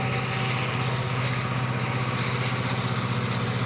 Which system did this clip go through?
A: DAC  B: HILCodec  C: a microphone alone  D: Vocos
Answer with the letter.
C